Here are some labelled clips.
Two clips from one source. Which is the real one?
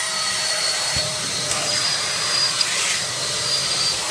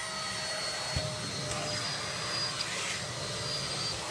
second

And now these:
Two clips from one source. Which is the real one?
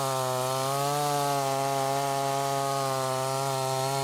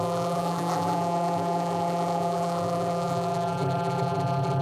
first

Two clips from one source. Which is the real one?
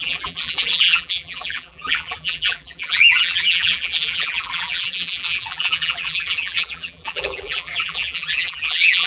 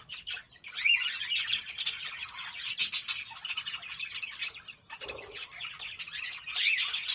second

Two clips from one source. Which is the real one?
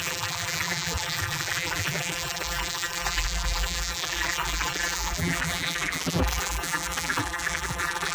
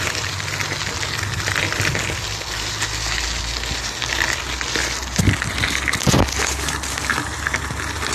second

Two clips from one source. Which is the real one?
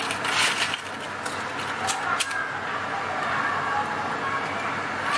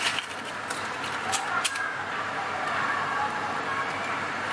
first